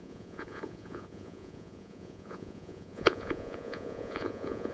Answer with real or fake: fake